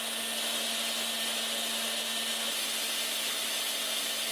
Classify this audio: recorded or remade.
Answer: recorded